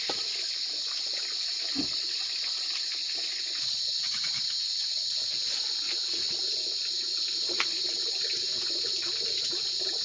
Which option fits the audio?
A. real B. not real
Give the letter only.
A